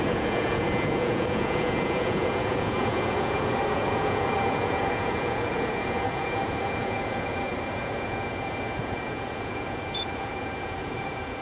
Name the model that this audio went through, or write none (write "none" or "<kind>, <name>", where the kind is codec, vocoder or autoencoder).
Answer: vocoder, Vocos